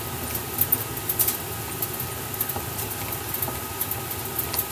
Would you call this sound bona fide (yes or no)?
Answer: yes